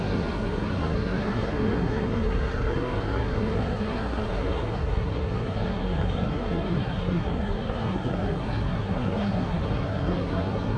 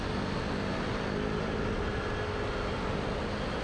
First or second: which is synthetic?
first